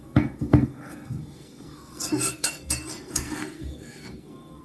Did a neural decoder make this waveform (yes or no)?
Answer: yes